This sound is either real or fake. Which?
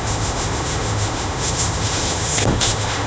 fake